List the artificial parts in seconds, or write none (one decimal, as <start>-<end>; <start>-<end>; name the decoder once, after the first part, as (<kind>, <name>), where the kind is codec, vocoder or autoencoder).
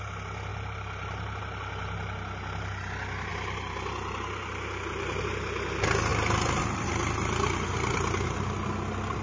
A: none